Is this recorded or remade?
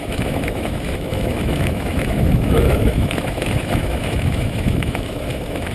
remade